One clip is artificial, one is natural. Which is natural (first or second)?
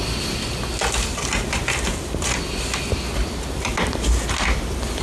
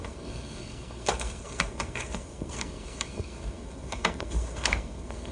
first